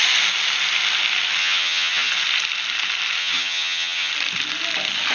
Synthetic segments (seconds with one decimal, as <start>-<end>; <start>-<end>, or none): 1.4-2.1; 3.2-4.1